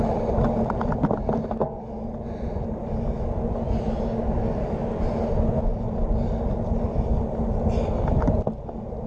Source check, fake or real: real